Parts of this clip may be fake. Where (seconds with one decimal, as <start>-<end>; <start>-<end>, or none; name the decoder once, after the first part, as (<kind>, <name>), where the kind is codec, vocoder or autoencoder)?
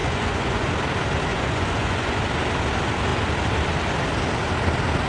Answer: 0.0-0.7 (vocoder, Vocos); 1.3-2.2